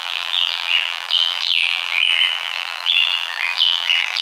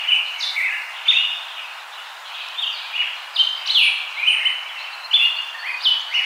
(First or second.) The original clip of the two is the second